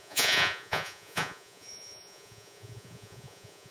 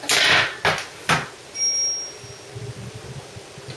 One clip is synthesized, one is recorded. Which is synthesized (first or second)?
first